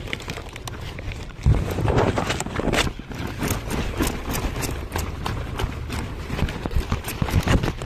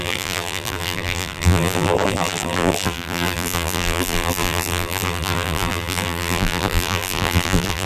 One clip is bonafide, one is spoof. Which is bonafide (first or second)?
first